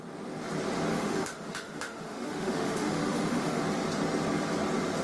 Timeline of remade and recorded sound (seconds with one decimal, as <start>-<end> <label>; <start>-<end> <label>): 0.0-0.9 recorded; 0.9-3.6 remade; 3.6-5.0 recorded